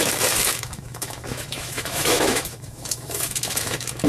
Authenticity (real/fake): fake